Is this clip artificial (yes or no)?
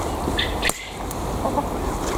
no